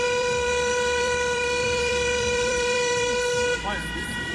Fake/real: fake